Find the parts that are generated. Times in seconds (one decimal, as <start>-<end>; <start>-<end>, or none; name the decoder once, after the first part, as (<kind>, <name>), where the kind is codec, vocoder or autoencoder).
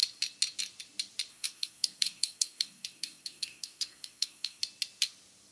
1.3-4.6 (codec, SNAC)